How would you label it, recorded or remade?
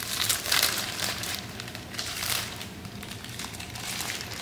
remade